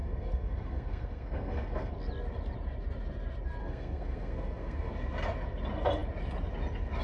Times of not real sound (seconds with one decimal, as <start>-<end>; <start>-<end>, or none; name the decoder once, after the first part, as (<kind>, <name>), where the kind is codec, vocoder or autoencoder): 0.0-1.9 (codec, SNAC); 3.6-4.9